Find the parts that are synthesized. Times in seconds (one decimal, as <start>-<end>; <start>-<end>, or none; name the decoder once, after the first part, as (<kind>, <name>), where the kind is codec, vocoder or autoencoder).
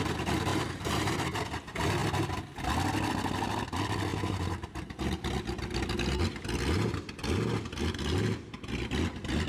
0.5-1.1 (vocoder, BigVGAN v2); 4.1-5.0